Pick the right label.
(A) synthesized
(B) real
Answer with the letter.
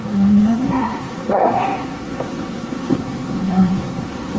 A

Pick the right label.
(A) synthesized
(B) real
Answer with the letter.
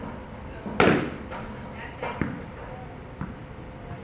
B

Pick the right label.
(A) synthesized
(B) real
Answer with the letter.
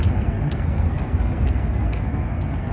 A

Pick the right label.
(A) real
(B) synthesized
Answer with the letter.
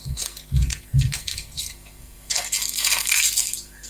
B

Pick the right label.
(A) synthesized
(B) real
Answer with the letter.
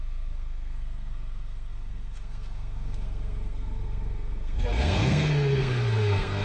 A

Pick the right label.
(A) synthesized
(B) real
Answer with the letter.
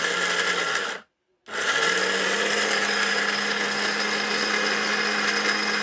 B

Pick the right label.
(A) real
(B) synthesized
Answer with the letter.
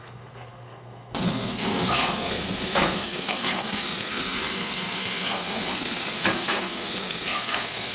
B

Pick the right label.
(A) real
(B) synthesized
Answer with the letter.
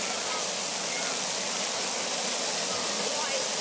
A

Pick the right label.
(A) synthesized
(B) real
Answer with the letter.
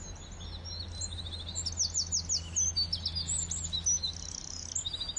B